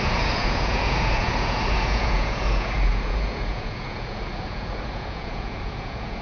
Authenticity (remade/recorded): remade